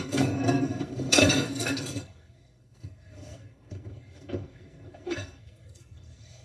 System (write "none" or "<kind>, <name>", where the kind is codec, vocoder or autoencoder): codec, SNAC